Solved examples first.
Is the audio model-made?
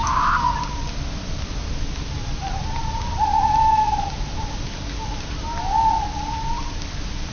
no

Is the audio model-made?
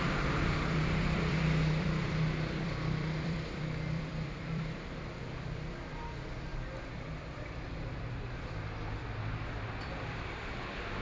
yes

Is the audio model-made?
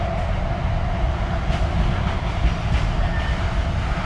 no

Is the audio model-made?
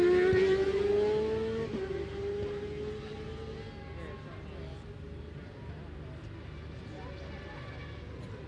no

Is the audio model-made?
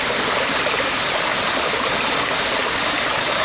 no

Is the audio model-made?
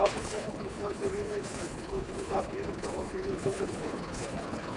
yes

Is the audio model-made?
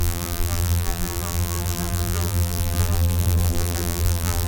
yes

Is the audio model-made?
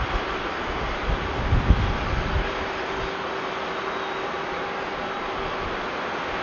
no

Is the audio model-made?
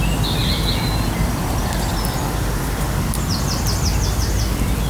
no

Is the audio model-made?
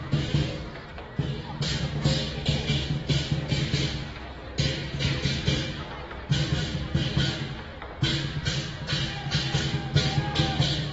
no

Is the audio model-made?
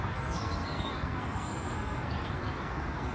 yes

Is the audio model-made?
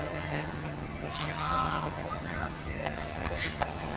yes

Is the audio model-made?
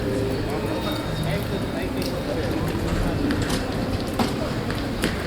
no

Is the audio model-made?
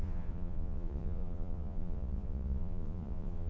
yes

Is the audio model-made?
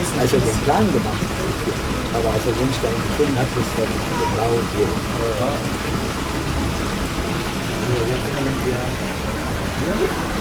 no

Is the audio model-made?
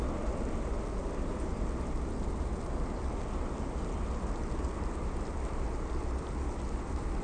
no